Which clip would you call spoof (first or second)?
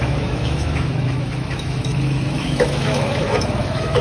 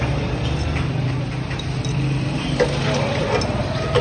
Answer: first